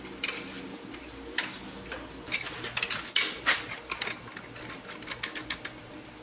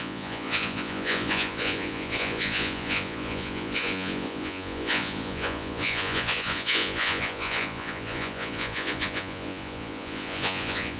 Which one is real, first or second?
first